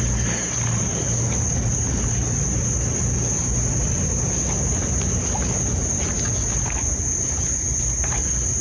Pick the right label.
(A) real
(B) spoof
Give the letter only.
A